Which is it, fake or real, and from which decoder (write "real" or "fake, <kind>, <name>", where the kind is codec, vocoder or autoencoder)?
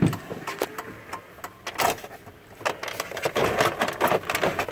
real